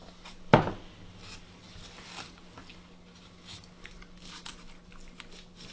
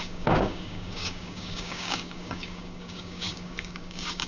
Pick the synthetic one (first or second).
second